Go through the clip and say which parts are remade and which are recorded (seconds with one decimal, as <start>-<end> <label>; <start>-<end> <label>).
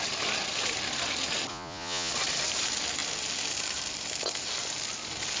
0.0-1.5 recorded; 1.5-2.1 remade; 2.1-5.4 recorded